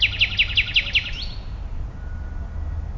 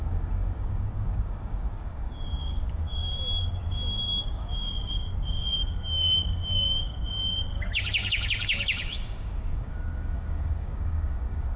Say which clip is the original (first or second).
first